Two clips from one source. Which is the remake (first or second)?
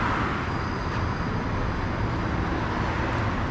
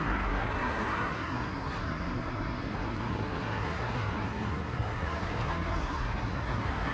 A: second